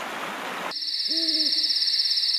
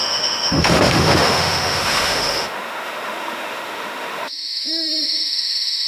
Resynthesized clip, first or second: second